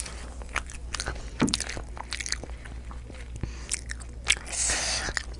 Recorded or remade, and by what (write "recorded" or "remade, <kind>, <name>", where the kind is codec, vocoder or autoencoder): recorded